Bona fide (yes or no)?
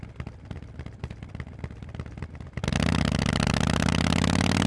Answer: yes